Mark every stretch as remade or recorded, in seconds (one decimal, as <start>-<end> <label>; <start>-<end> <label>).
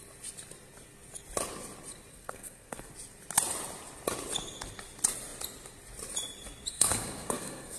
0.0-2.1 recorded; 2.1-2.9 remade; 2.9-6.7 recorded; 6.7-7.8 remade